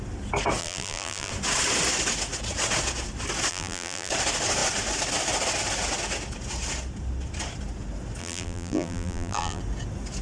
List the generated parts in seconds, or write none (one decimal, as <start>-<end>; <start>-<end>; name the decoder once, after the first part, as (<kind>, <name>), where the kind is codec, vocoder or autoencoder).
0.6-1.3 (vocoder, BigVGAN v2); 3.5-4.1; 8.2-9.6